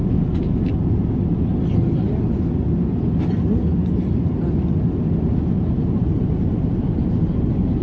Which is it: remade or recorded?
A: recorded